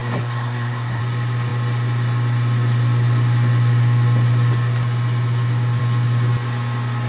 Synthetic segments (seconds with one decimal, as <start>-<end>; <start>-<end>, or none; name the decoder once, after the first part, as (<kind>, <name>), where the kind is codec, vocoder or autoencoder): 0.0-1.0 (codec, SNAC)